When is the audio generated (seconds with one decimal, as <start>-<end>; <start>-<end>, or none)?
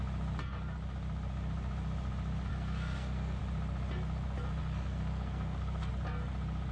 2.5-3.4; 4.6-5.9